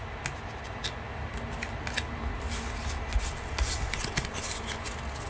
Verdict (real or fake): real